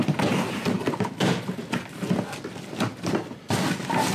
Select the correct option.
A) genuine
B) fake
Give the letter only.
A